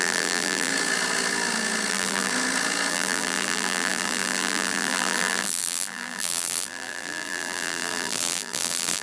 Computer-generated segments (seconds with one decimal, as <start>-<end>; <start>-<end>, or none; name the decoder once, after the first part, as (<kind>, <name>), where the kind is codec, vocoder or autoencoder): 0.0-0.7 (vocoder, BigVGAN v2); 1.9-2.3; 2.9-9.0